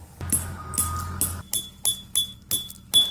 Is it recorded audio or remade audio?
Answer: recorded